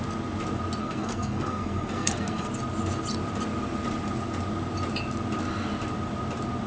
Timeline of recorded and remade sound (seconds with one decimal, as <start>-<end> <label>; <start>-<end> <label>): 0.0-0.8 recorded; 0.8-2.5 remade; 2.5-6.7 recorded